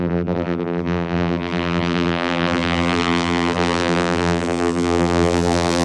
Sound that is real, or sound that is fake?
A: fake